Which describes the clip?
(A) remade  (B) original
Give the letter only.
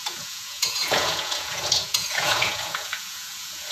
A